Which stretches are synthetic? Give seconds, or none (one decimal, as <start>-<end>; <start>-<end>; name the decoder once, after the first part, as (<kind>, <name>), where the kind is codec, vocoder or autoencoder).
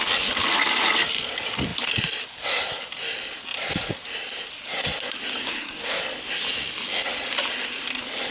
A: 5.4-6.0 (codec, SNAC)